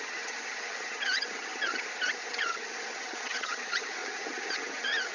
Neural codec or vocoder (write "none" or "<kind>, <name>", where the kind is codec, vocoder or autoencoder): vocoder, HiFi-GAN